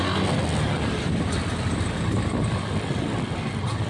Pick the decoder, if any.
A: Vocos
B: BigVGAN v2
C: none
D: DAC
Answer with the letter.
C